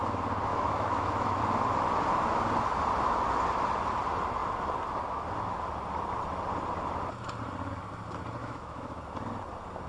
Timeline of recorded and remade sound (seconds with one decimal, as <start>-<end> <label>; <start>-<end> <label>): 0.0-0.5 recorded; 0.5-1.4 remade; 1.4-8.4 recorded; 8.4-9.0 remade; 9.0-9.9 recorded